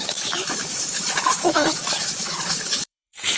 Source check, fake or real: fake